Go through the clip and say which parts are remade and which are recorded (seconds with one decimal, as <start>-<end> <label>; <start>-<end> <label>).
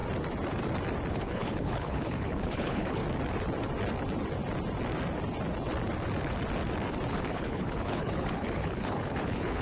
0.0-1.1 recorded; 1.1-3.0 remade; 3.0-7.1 recorded; 7.1-9.6 remade